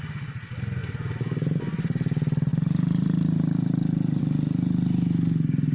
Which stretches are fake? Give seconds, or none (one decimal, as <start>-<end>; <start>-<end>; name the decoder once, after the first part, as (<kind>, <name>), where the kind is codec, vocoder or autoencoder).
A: 0.8-1.6 (vocoder, BigVGAN v2); 2.5-4.2